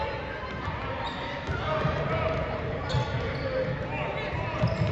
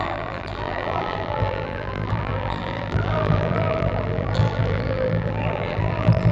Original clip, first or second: first